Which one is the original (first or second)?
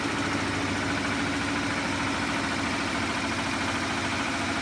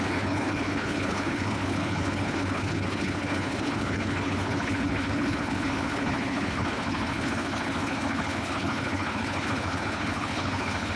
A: first